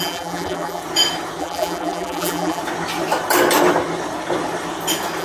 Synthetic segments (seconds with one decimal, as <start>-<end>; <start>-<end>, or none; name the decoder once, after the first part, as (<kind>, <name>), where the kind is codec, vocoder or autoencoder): 0.0-0.8 (vocoder, BigVGAN v2); 1.4-2.6